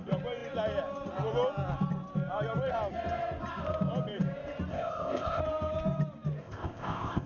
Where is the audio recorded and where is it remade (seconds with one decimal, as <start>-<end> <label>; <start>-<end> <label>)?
0.0-4.7 recorded; 4.7-5.4 remade; 5.4-6.4 recorded; 6.4-7.3 remade